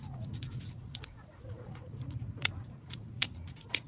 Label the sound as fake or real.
fake